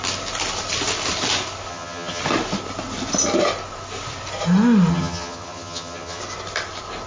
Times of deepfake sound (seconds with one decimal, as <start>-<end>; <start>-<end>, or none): 1.7-2.2; 4.9-6.2